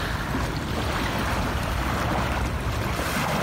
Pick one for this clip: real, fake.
real